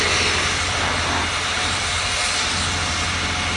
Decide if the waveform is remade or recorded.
recorded